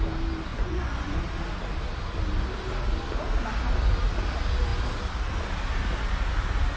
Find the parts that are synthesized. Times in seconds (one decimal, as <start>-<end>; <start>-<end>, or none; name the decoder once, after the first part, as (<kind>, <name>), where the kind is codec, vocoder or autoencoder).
0.5-1.2 (vocoder, Vocos)